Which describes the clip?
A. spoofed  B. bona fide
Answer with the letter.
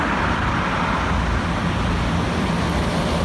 B